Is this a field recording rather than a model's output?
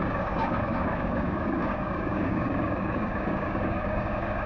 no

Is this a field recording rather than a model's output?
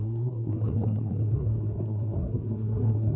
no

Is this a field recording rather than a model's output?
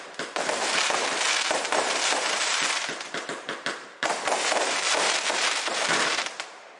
no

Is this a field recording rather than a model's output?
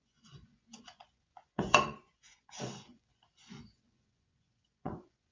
no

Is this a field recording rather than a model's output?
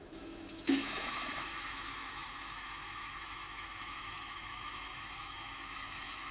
no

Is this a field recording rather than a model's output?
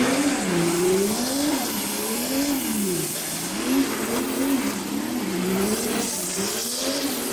yes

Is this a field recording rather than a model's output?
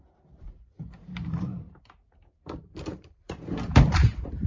no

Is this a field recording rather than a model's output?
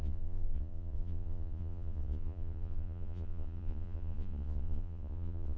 no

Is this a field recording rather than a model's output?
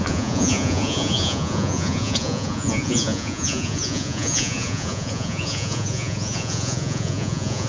no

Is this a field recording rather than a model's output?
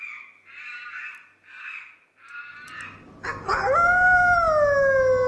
yes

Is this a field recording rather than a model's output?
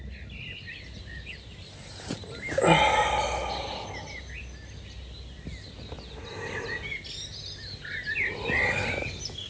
yes